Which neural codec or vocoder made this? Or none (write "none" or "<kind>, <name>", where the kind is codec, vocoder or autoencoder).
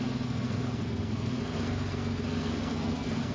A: codec, SNAC